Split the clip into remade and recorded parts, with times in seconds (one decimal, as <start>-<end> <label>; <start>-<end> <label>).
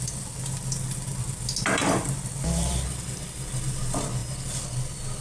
0.0-5.2 recorded